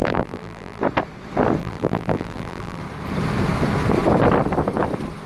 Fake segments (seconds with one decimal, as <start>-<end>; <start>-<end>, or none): 0.0-0.8; 1.6-2.8